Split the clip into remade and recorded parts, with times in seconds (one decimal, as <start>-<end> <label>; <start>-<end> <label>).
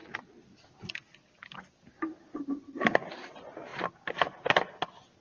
0.0-5.2 recorded